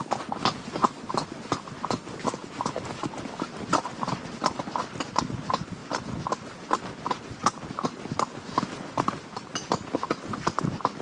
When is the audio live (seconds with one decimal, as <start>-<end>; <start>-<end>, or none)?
0.0-11.0